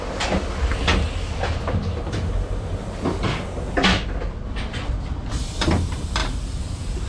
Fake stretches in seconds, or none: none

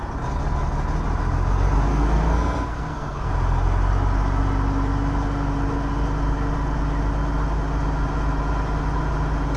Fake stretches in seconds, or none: 1.9-3.3

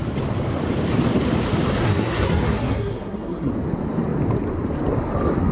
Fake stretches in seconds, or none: 1.8-3.5

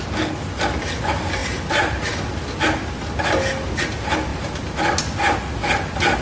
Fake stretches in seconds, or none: none

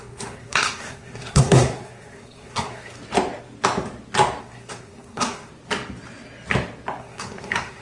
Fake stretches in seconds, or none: 0.0-3.0; 4.4-5.5; 7.0-7.8

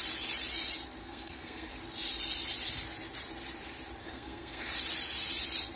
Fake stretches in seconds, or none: 1.0-1.7; 4.0-4.7

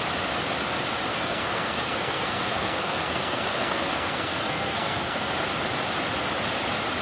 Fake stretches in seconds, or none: 1.1-5.3

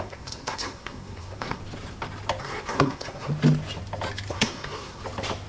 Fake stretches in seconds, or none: 0.0-1.6; 2.4-3.3; 4.3-5.0